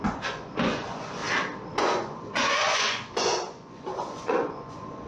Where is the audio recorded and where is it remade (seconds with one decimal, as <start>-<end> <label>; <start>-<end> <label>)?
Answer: 0.0-1.2 remade; 1.2-1.8 recorded; 1.8-5.1 remade